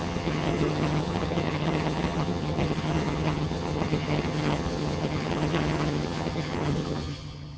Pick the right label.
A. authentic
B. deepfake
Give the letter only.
B